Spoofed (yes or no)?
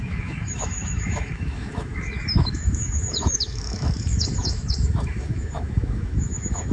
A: yes